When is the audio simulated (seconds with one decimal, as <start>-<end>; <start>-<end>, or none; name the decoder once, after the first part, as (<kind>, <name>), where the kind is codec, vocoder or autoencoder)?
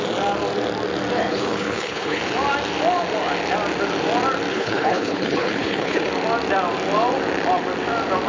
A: 1.3-2.2 (codec, HILCodec); 4.5-6.1